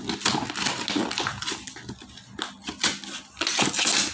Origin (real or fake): real